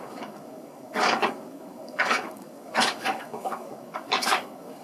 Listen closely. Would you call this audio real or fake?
fake